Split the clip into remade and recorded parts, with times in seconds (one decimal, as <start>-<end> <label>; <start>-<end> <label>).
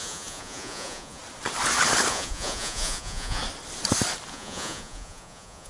0.0-1.2 remade; 1.2-2.1 recorded; 2.1-3.4 remade; 3.4-4.3 recorded; 4.3-5.7 remade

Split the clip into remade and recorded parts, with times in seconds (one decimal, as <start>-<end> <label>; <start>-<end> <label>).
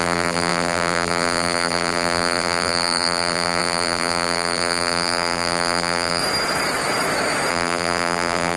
0.0-6.2 remade; 6.2-7.5 recorded; 7.5-8.6 remade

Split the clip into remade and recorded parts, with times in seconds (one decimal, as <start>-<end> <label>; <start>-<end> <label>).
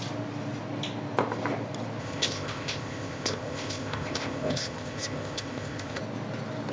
0.0-2.0 recorded; 2.0-6.0 remade; 6.0-6.7 recorded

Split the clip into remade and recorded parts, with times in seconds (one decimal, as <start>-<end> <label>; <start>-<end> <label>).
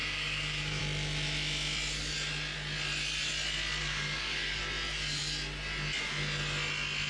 0.0-0.8 remade; 0.8-3.8 recorded; 3.8-4.6 remade; 4.6-7.1 recorded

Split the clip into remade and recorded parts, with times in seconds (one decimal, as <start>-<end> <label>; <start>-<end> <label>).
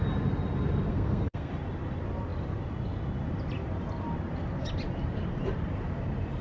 0.0-0.9 recorded; 0.9-1.5 remade; 1.5-6.4 recorded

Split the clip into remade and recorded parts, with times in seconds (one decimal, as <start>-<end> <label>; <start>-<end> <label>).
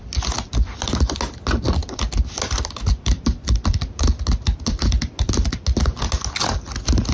0.0-7.1 recorded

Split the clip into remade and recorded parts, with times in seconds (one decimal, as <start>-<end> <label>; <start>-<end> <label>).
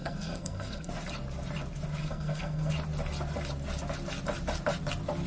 0.0-0.9 remade; 0.9-2.0 recorded; 2.0-2.7 remade; 2.7-5.3 recorded